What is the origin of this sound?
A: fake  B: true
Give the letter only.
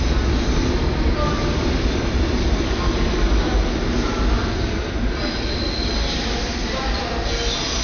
B